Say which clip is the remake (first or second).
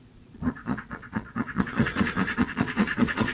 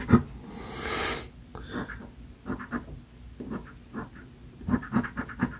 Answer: first